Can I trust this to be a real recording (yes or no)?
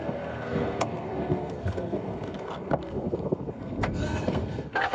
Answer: no